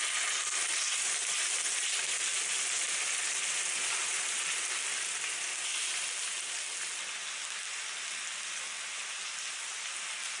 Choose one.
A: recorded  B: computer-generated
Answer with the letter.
A